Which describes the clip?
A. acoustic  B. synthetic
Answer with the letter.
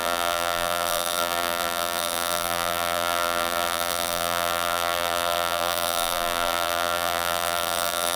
B